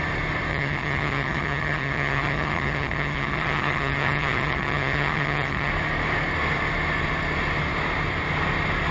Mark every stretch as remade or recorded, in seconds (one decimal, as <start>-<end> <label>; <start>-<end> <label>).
0.0-0.5 recorded; 0.5-5.7 remade; 5.7-8.9 recorded